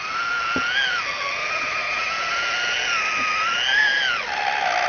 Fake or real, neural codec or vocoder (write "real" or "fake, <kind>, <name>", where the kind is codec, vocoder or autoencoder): real